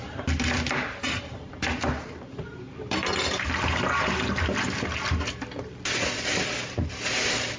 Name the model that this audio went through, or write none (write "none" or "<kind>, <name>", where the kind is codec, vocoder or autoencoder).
none